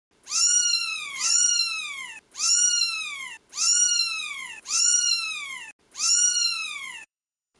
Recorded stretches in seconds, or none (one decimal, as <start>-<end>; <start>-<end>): 0.0-0.8; 1.5-4.2; 5.1-6.3